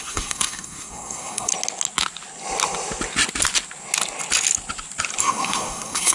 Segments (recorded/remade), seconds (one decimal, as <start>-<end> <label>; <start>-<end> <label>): 0.0-1.5 remade; 1.5-5.2 recorded; 5.2-6.1 remade